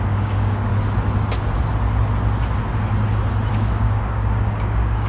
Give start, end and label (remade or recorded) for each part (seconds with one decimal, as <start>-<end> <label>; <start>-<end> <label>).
0.0-0.7 remade; 0.7-3.5 recorded; 3.5-5.1 remade